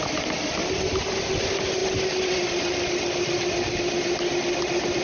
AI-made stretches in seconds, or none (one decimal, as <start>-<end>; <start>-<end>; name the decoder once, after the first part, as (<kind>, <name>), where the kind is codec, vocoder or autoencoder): none